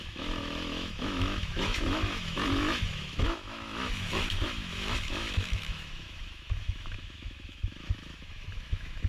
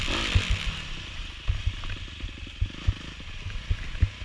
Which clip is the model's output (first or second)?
first